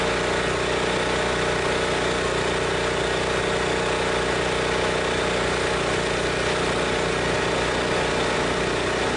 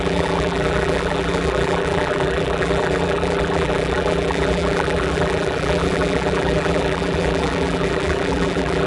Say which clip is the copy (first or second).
second